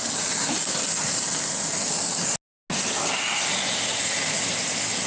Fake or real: real